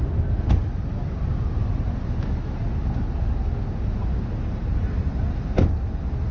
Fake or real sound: real